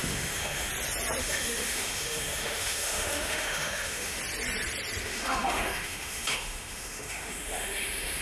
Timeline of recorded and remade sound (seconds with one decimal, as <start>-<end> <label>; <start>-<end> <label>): 0.0-0.7 remade; 0.7-1.2 recorded; 1.2-4.2 remade; 4.2-5.0 recorded; 5.0-8.2 remade